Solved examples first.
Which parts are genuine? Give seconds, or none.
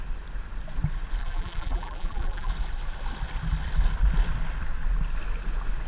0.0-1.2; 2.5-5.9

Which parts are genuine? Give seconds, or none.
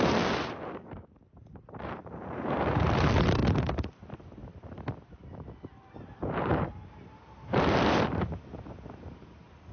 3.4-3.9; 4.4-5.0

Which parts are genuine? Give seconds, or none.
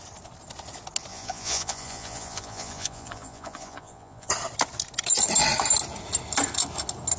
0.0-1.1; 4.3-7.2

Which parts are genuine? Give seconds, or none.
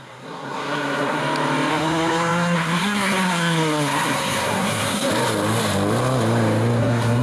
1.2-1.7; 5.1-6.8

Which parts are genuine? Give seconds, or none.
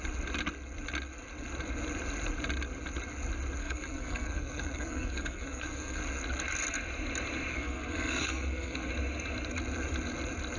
0.0-3.6; 6.0-7.5; 8.9-10.6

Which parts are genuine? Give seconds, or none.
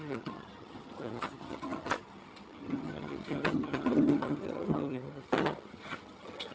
none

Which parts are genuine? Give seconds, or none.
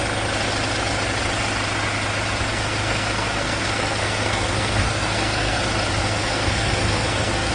0.0-2.5; 5.6-6.0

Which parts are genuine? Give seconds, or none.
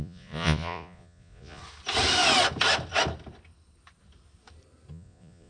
1.6-4.9